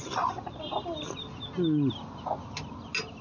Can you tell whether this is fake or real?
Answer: real